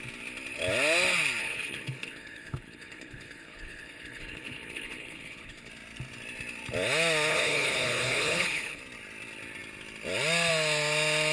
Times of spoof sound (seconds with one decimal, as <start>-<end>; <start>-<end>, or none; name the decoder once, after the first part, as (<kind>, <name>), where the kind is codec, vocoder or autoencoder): 1.4-5.7 (codec, HILCodec); 7.3-8.8